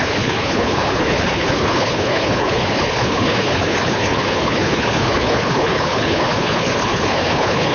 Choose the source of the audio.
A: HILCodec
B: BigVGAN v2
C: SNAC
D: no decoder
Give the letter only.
A